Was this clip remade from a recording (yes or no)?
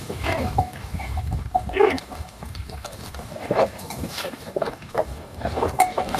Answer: yes